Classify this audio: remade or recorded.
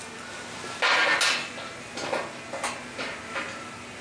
recorded